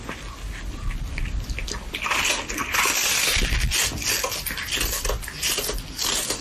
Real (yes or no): yes